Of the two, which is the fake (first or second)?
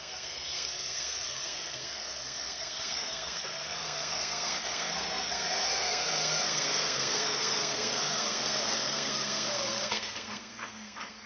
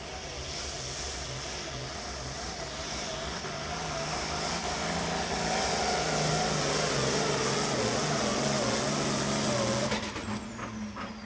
first